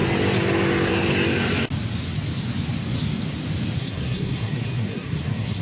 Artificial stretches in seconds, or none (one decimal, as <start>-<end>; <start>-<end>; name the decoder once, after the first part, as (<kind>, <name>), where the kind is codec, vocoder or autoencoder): 3.8-5.6 (codec, SNAC)